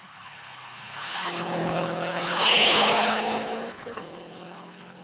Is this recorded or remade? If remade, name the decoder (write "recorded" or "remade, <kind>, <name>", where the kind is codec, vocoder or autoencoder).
remade, codec, HILCodec